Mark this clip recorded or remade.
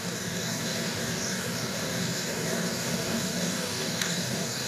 remade